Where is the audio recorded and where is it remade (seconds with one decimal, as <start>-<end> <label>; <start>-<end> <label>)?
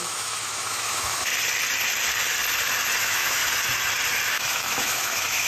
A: 0.0-1.3 remade; 1.3-3.0 recorded; 3.0-3.4 remade; 3.4-4.3 recorded; 4.3-5.5 remade